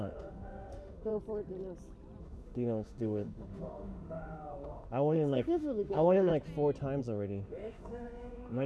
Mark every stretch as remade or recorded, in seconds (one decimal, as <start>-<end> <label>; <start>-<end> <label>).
0.0-1.1 remade; 1.1-2.2 recorded; 2.2-6.3 remade; 6.3-7.0 recorded; 7.0-8.7 remade